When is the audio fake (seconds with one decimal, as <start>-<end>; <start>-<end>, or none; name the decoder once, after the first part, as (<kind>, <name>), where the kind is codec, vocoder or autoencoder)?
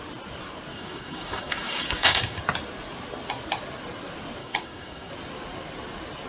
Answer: 0.7-2.4 (codec, DAC); 4.4-5.1